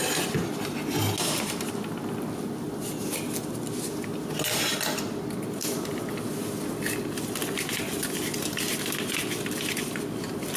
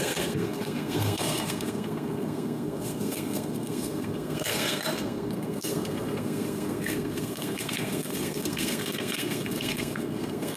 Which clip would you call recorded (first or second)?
first